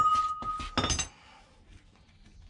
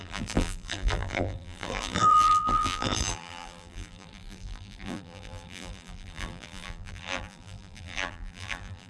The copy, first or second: second